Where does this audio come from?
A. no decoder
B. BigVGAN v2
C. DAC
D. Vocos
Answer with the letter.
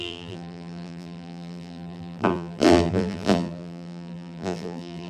B